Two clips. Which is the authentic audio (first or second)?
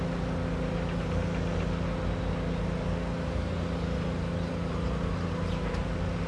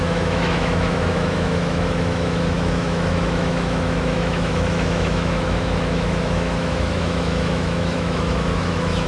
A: first